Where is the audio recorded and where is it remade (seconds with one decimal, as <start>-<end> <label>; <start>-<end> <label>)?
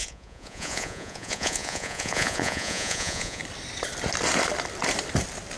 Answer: 0.0-3.4 remade; 3.4-5.6 recorded